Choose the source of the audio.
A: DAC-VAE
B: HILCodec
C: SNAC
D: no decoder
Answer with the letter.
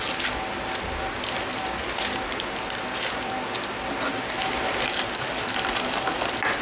D